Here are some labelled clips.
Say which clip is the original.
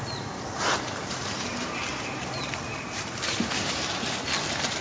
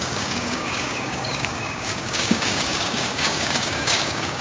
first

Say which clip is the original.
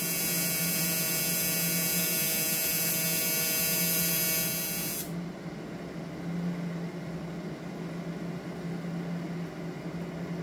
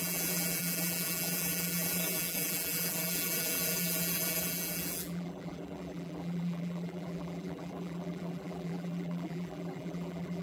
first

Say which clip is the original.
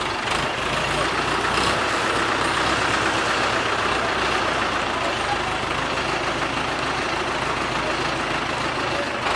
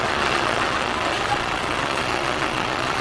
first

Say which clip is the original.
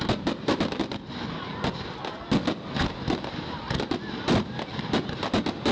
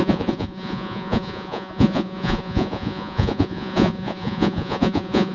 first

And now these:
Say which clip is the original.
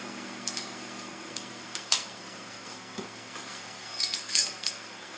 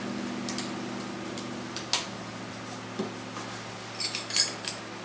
second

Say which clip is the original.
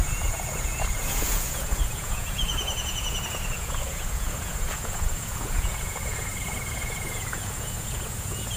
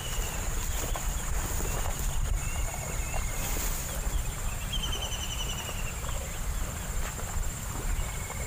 second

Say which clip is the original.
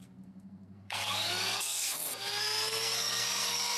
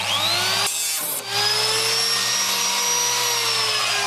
second